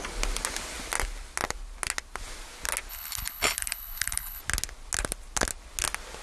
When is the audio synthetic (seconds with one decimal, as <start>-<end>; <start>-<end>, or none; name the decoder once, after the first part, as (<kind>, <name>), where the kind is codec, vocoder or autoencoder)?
2.9-4.4 (codec, HILCodec)